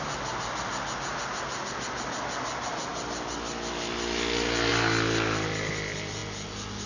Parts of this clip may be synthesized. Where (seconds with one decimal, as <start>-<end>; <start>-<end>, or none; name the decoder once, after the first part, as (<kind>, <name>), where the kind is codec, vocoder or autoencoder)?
none